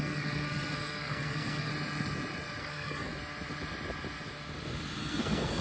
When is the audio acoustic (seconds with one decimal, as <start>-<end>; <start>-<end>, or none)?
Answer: 1.7-2.6; 3.1-5.0